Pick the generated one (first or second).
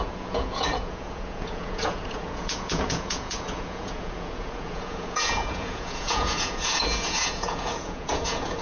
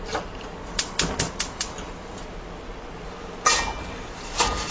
first